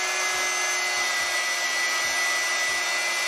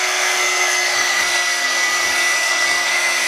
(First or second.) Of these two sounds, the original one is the first